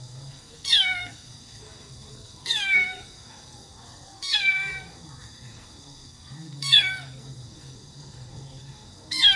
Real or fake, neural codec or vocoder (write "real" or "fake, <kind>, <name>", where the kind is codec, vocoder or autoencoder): fake, codec, SNAC